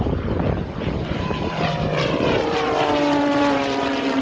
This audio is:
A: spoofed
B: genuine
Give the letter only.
A